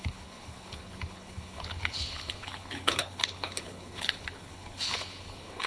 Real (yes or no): no